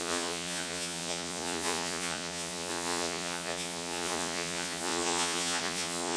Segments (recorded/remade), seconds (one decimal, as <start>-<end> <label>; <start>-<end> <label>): 0.0-6.2 remade